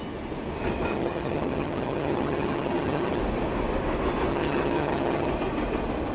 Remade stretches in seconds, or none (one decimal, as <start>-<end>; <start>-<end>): 0.9-3.2; 4.3-5.3